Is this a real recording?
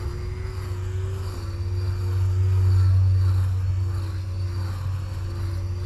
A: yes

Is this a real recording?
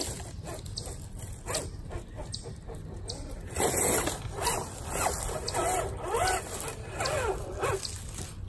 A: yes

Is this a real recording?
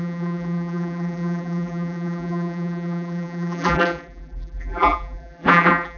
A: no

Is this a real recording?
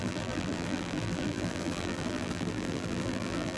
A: no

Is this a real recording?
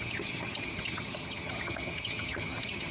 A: no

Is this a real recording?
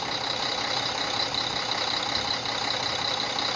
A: yes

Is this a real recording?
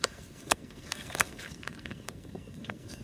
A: no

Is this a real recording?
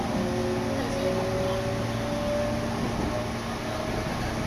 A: yes